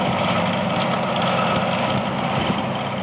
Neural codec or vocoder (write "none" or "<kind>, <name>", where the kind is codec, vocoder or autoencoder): none